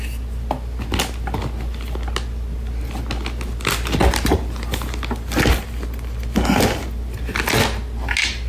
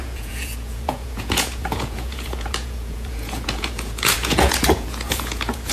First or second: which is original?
first